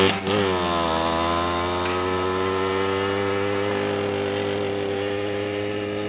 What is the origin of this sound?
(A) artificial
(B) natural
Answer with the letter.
B